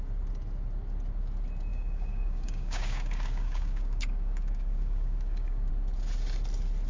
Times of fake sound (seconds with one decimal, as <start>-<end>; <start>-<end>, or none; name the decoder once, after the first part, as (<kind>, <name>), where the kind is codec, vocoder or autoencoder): 1.7-5.7 (codec, DAC)